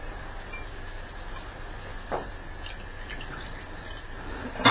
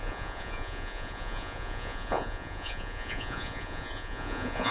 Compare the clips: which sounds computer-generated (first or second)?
second